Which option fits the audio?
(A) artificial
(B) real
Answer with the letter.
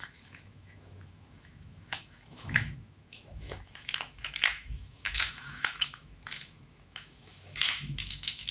A